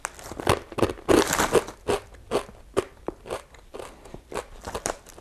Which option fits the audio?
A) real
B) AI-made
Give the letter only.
A